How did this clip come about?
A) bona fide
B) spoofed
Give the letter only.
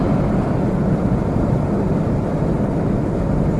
A